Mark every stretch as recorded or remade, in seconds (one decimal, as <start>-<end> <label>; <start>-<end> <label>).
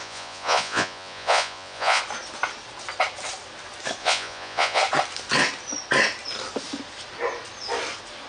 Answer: 0.0-2.0 remade; 2.0-4.0 recorded; 4.0-4.8 remade; 4.8-8.3 recorded